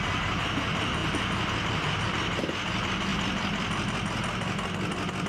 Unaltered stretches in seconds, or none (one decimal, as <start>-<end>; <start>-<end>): 0.0-1.0; 2.1-3.1; 4.7-5.3